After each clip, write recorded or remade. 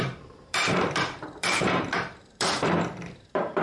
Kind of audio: remade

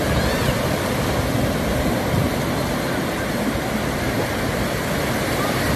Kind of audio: recorded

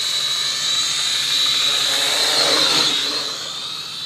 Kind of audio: remade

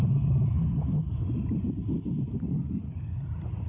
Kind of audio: recorded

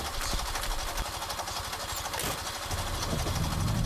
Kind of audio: recorded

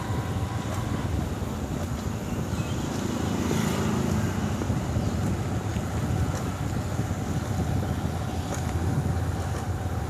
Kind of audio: recorded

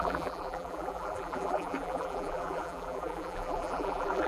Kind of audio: remade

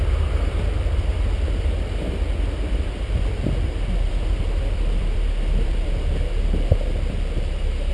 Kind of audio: remade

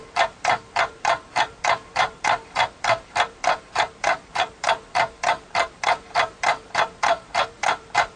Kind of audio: remade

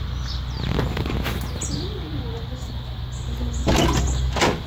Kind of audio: recorded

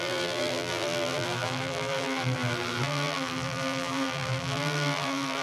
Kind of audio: remade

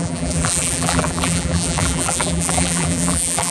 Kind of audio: remade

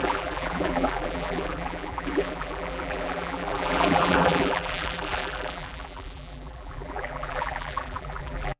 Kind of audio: remade